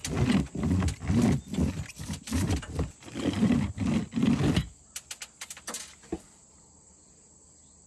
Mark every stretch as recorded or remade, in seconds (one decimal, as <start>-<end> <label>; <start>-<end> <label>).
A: 0.0-7.9 recorded